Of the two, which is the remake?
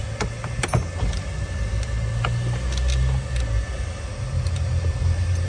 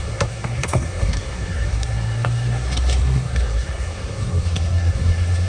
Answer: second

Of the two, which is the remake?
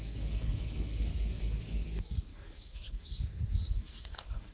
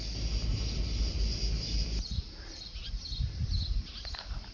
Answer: first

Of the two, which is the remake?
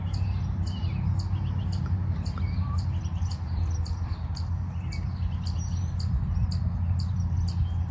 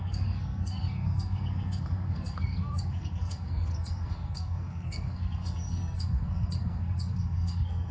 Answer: second